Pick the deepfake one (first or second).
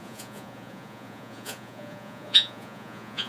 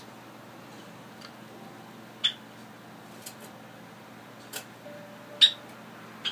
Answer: first